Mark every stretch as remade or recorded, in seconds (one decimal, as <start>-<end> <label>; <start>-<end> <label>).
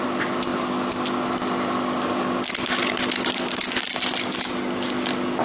0.0-5.4 recorded